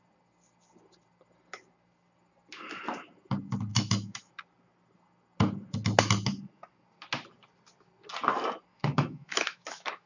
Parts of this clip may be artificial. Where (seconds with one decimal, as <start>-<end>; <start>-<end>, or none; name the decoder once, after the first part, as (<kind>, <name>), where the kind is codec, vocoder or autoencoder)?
3.7-4.3 (autoencoder, DAC-VAE); 8.7-10.1